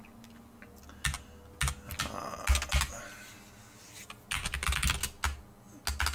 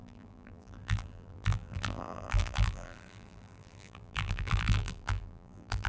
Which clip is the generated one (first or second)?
second